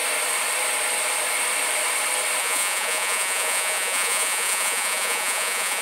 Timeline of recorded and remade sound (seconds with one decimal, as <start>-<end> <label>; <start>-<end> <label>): 0.0-2.4 recorded; 2.4-5.8 remade